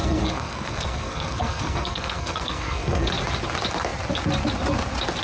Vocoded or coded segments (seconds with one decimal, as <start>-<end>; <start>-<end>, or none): 0.0-3.1